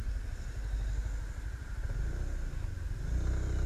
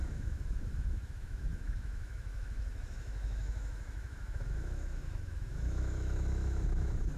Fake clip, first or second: second